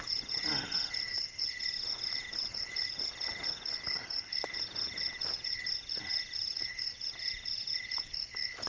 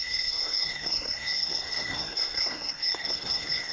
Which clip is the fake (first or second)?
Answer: second